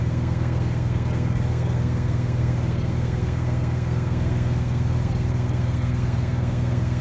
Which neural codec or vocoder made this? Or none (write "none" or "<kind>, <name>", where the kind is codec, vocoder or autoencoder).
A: codec, SNAC